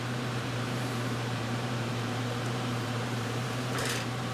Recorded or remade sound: remade